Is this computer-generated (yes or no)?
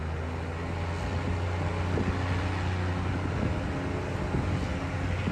no